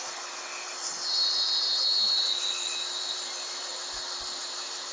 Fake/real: real